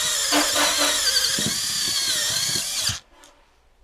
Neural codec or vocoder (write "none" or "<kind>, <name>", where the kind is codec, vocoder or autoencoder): none